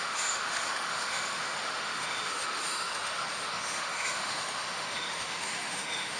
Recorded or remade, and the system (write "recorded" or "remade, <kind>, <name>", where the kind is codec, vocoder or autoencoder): remade, autoencoder, DAC-VAE